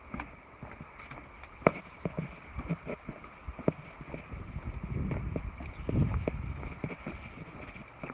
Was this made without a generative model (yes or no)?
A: yes